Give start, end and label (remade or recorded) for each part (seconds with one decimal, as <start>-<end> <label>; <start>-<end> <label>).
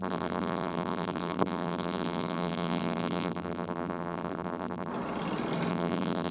0.0-4.9 remade; 4.9-5.7 recorded; 5.7-6.3 remade